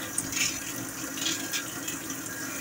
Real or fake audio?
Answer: real